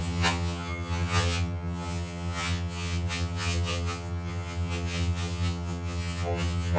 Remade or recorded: remade